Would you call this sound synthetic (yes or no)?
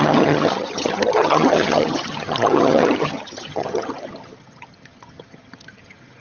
yes